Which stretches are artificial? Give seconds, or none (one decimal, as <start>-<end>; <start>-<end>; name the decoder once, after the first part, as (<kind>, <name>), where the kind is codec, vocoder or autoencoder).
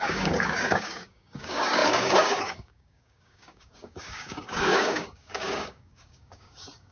0.0-6.9 (codec, DAC)